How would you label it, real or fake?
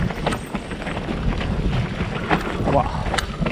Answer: real